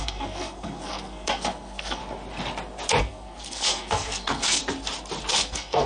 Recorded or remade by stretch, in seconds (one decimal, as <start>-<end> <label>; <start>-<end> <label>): 0.0-2.0 remade; 2.0-3.0 recorded; 3.0-4.6 remade; 4.6-5.3 recorded; 5.3-5.9 remade